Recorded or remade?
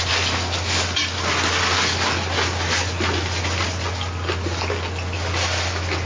recorded